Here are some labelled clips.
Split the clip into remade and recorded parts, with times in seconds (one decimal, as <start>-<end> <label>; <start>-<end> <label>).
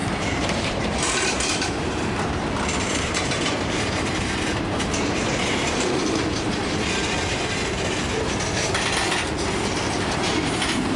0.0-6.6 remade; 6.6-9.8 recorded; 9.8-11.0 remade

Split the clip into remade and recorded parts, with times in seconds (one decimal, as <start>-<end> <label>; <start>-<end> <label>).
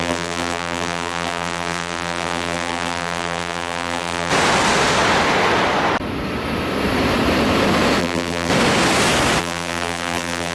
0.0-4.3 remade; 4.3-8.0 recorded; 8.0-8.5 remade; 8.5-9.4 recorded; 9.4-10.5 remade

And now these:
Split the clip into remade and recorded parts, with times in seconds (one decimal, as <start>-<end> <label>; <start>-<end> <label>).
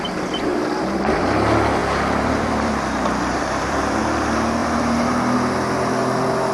0.0-0.5 recorded; 0.5-1.2 remade; 1.2-1.8 recorded; 1.8-4.0 remade; 4.0-4.6 recorded; 4.6-5.1 remade; 5.1-6.5 recorded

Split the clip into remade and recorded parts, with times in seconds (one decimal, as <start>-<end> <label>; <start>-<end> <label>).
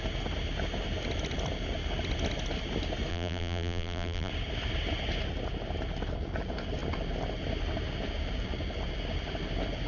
0.0-3.1 recorded; 3.1-4.3 remade; 4.3-9.9 recorded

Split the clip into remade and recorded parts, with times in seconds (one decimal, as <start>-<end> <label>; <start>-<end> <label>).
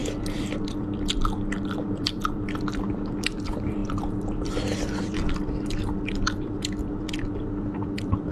0.0-8.3 remade